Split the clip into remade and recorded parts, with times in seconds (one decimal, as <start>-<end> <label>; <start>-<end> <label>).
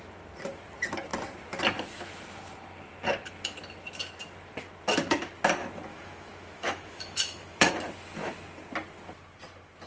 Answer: 0.0-5.9 recorded; 5.9-7.7 remade; 7.7-9.9 recorded